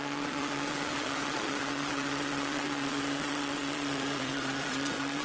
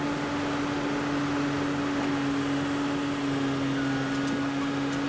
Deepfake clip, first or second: first